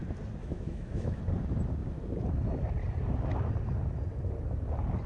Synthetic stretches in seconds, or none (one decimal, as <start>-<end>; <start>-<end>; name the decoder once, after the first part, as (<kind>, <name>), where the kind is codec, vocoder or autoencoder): 0.4-1.2 (autoencoder, DAC-VAE)